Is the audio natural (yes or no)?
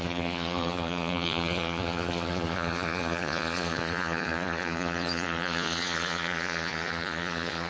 no